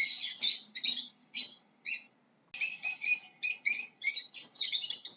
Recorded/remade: recorded